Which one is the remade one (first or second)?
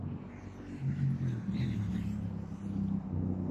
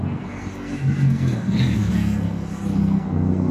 second